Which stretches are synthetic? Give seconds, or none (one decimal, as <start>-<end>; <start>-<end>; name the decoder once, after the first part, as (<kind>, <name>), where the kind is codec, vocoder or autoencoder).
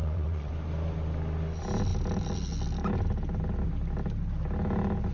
0.0-0.5 (vocoder, WaveNeXt)